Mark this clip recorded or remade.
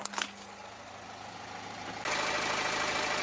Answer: recorded